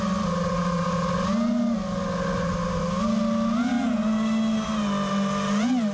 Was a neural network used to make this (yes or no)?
no